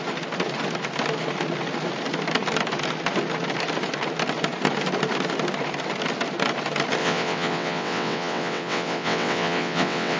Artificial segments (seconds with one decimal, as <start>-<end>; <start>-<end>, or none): 7.0-10.2